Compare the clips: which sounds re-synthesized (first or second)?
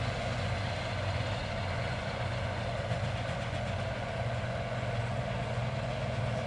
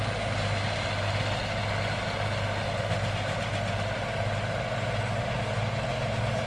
first